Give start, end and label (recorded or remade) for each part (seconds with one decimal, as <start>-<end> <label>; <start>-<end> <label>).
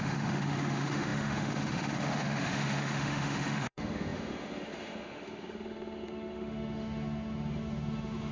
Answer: 0.0-8.3 remade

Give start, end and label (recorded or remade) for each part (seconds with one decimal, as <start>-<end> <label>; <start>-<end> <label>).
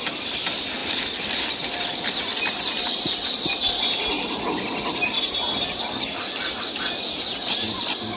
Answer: 0.0-8.2 recorded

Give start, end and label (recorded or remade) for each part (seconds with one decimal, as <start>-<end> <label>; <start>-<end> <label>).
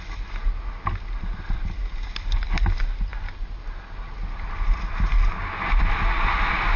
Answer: 0.0-6.8 recorded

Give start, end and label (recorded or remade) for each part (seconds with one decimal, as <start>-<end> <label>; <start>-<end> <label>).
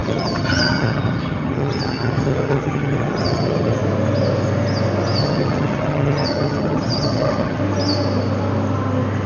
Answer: 0.0-3.8 remade; 3.8-5.2 recorded; 5.2-7.6 remade; 7.6-9.3 recorded